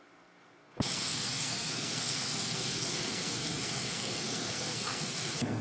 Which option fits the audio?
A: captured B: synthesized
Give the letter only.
B